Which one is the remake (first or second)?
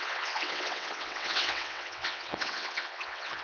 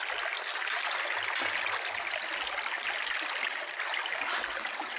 first